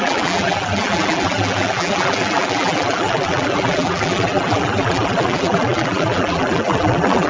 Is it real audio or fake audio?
fake